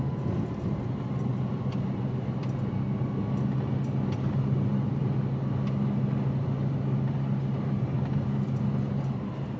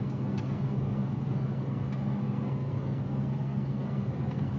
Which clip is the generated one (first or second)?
second